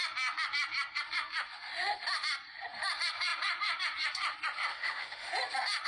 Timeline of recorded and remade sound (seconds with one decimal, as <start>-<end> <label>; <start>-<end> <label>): 0.0-4.7 recorded; 4.7-5.3 remade; 5.3-5.9 recorded